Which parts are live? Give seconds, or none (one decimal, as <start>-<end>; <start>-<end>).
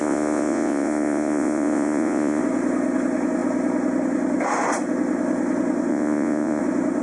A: 2.4-5.9; 6.6-7.0